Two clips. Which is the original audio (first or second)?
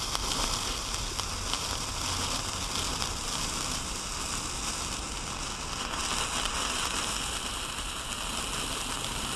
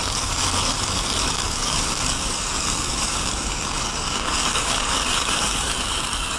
first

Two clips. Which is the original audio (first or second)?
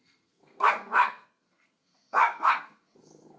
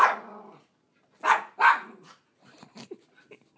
second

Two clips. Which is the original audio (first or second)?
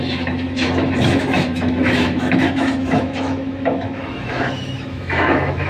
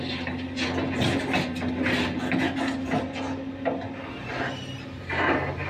second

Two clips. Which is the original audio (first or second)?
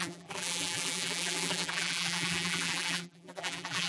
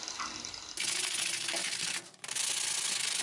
second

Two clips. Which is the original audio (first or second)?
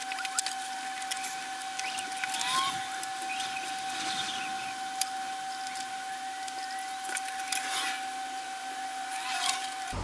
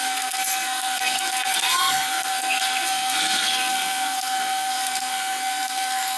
first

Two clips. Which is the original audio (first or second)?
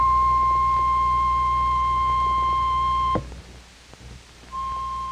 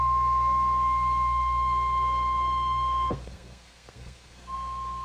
first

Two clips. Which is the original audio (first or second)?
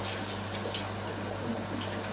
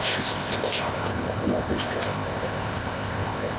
first